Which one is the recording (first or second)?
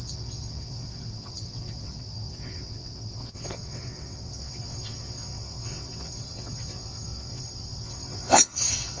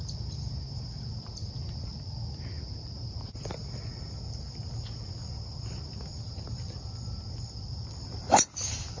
second